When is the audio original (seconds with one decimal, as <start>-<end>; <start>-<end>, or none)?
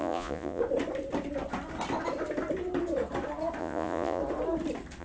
0.6-3.6; 4.2-5.0